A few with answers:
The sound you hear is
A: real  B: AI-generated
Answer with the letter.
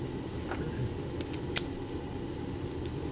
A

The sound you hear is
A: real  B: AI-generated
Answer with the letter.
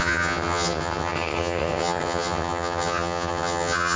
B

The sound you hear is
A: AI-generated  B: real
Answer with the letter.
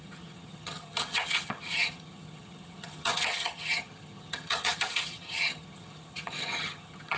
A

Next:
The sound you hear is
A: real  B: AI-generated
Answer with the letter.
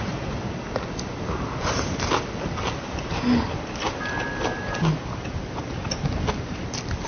A